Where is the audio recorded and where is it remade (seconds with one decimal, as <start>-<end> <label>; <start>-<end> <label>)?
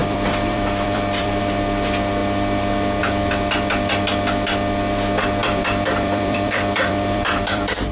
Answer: 0.0-1.4 remade; 1.4-5.4 recorded; 5.4-7.9 remade